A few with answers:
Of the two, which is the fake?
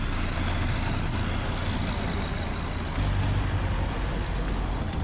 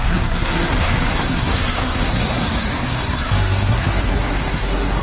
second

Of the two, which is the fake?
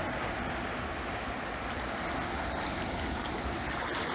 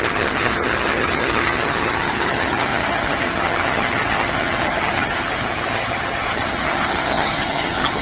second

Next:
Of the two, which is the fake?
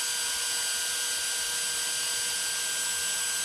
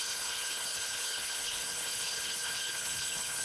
second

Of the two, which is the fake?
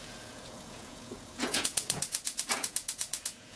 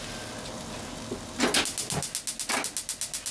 first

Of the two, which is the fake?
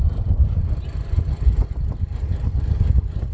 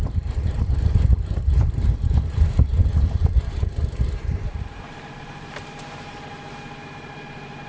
second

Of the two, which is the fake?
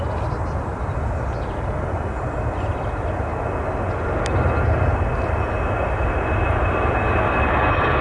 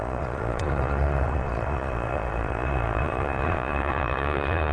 second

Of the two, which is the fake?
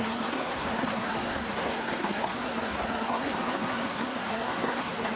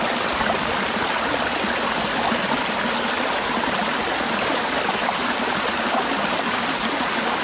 first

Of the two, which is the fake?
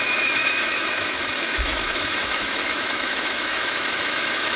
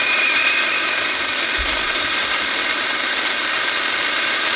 first